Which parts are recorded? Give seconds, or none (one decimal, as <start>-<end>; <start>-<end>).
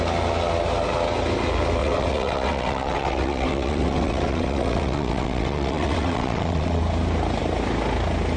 0.0-1.8; 6.8-8.4